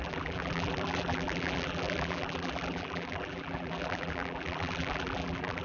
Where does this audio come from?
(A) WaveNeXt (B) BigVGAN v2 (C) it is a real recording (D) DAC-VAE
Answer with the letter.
B